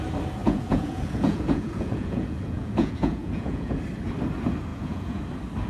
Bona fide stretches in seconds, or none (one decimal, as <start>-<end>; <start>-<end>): 0.0-0.4; 3.8-4.7; 5.2-5.7